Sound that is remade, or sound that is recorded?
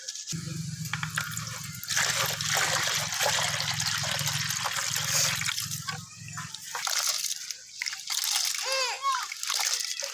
recorded